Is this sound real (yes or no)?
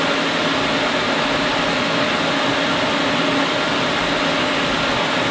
yes